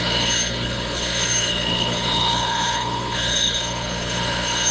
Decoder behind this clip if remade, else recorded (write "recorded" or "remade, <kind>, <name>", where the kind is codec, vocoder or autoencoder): remade, codec, HILCodec